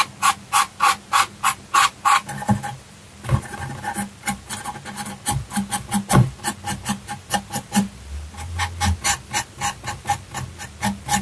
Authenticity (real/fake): real